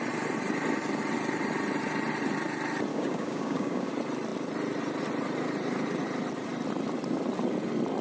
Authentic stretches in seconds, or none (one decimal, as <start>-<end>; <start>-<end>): 0.0-2.9; 3.9-8.0